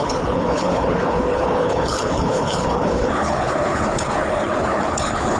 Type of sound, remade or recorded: remade